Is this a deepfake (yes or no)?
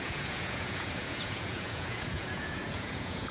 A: yes